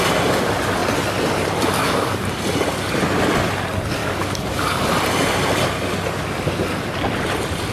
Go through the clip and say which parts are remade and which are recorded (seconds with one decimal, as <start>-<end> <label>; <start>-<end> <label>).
0.0-1.8 recorded; 1.8-2.4 remade; 2.4-4.0 recorded; 4.0-4.8 remade; 4.8-7.7 recorded